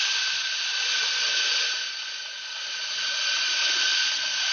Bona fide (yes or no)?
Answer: yes